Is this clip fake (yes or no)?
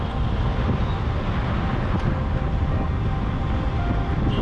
no